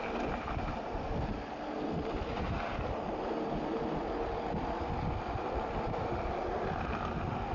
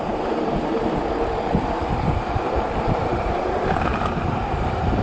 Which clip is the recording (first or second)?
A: first